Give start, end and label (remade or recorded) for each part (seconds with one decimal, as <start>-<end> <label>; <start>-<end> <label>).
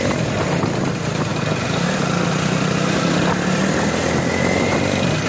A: 0.0-5.3 recorded